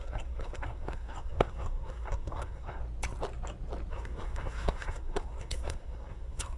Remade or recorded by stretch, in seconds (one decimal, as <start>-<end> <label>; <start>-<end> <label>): 0.0-2.8 remade; 2.8-3.9 recorded; 3.9-6.6 remade